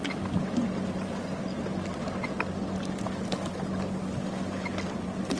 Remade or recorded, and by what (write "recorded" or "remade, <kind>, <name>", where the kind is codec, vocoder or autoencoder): recorded